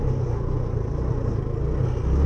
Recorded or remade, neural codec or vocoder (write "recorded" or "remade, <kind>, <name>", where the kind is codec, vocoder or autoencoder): recorded